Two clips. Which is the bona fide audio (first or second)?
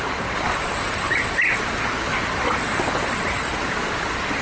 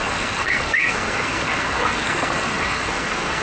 first